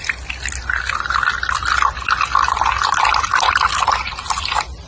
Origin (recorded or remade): recorded